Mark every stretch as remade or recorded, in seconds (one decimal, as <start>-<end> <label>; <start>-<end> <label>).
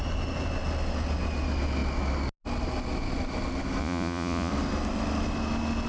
0.0-3.8 recorded; 3.8-4.5 remade; 4.5-5.9 recorded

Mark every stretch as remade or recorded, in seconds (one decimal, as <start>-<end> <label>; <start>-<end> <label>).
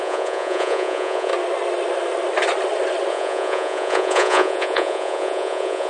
0.0-1.3 remade; 1.3-3.1 recorded; 3.1-5.9 remade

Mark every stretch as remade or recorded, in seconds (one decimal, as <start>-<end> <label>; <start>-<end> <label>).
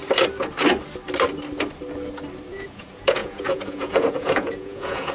0.0-2.5 recorded; 2.5-5.1 remade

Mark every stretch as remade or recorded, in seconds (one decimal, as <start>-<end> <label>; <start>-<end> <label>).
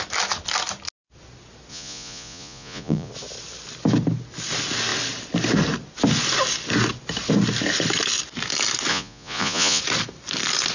0.0-1.7 recorded; 1.7-3.1 remade; 3.1-8.9 recorded; 8.9-9.8 remade; 9.8-10.7 recorded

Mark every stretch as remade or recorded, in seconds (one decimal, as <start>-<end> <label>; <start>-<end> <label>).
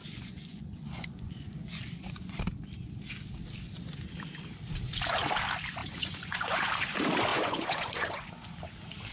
0.0-2.4 remade; 2.4-5.8 recorded; 5.8-6.7 remade; 6.7-7.3 recorded; 7.3-8.5 remade; 8.5-9.1 recorded